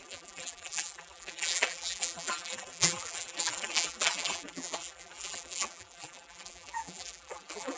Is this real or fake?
fake